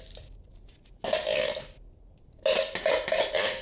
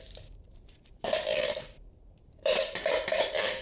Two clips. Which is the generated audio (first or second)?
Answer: second